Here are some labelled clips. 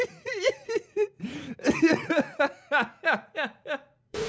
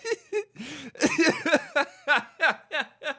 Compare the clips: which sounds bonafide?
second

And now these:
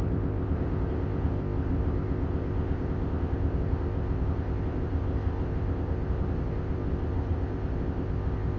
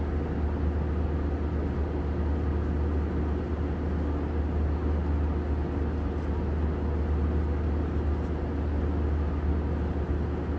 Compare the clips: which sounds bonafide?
second